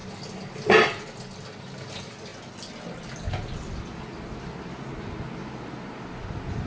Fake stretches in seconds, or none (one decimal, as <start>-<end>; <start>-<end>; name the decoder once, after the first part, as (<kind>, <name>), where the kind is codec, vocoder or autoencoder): none